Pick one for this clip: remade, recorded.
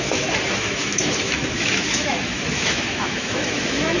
remade